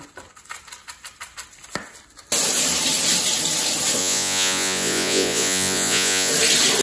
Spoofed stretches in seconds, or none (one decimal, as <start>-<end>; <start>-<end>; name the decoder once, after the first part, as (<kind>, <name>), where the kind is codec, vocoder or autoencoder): 4.0-6.3 (vocoder, Vocos)